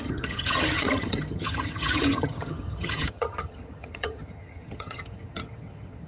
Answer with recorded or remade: remade